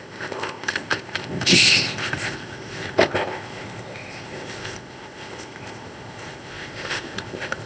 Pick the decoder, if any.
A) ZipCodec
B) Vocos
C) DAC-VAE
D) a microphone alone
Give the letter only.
A